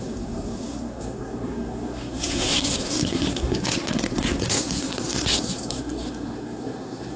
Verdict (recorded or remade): remade